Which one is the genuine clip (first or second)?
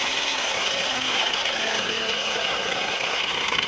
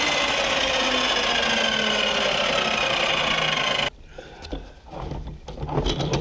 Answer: second